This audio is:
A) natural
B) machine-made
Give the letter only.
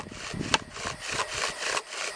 A